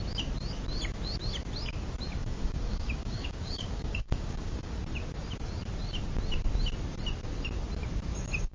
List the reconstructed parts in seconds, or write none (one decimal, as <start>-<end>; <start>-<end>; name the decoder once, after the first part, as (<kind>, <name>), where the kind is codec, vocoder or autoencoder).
2.2-4.7 (codec, DAC)